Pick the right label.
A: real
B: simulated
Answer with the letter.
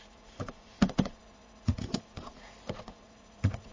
B